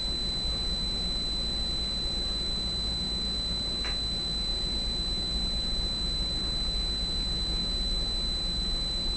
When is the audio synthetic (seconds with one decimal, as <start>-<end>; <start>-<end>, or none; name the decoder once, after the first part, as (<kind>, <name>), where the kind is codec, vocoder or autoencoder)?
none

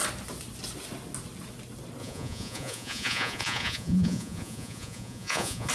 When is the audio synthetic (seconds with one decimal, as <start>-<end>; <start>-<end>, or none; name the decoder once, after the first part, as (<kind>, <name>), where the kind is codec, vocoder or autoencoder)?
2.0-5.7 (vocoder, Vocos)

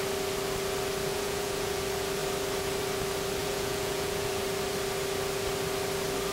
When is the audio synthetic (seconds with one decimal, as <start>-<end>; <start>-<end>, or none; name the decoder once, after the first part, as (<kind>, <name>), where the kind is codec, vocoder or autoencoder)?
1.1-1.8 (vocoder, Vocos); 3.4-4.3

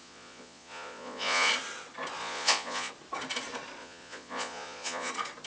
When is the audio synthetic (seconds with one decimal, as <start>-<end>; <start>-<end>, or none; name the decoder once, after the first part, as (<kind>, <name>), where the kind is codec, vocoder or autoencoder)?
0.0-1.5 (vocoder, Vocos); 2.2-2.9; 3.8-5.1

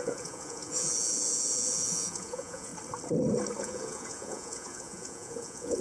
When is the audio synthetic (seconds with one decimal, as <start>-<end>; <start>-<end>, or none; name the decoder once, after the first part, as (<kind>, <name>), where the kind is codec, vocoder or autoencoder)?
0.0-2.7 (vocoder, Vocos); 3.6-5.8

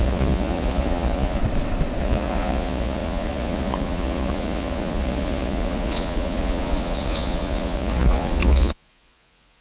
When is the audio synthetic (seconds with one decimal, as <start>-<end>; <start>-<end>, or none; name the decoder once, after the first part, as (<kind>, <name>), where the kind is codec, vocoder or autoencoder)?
0.0-1.4 (vocoder, Vocos); 2.0-9.6

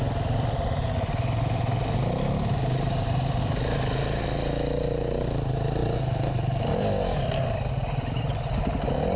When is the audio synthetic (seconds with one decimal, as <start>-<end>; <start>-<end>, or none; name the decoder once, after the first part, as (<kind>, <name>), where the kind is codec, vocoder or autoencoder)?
none